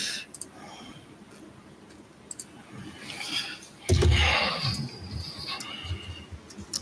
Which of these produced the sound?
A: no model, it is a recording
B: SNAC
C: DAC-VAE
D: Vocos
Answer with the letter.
A